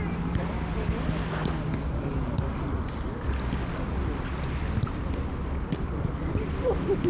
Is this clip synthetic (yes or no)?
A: no